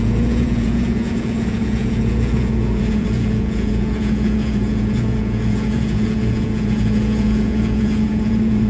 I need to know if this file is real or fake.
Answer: fake